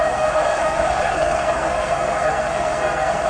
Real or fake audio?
fake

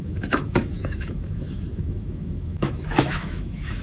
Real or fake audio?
fake